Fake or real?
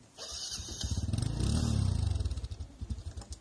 real